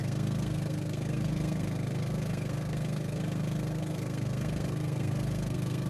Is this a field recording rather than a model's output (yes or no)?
no